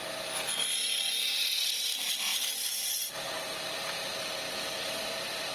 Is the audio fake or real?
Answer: real